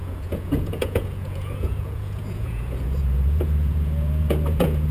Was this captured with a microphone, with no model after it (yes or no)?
no